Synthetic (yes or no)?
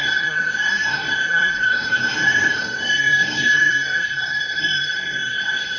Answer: yes